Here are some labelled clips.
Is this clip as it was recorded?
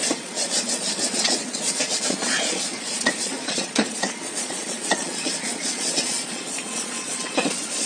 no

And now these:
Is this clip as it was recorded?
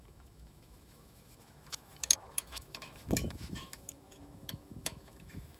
no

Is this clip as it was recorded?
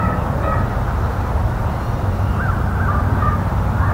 yes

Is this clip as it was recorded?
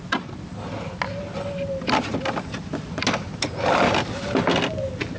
yes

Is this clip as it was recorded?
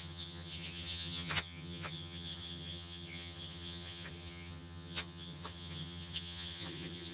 no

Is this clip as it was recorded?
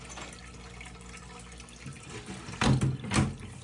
yes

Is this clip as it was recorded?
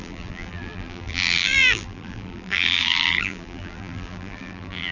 no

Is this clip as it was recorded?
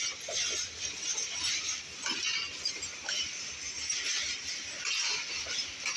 yes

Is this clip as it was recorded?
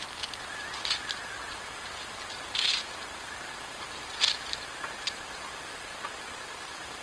yes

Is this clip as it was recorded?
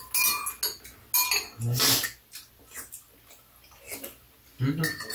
yes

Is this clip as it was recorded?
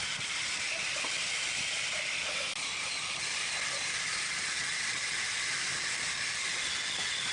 yes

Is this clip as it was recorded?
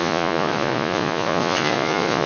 no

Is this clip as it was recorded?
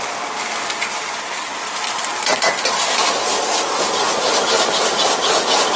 yes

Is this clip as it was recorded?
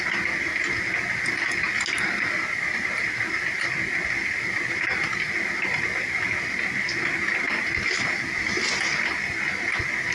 yes